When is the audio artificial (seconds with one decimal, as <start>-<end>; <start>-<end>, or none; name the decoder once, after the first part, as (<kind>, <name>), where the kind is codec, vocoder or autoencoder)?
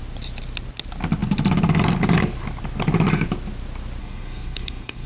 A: 4.0-5.1 (codec, SNAC)